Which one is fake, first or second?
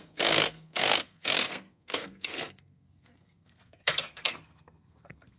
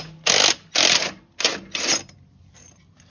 first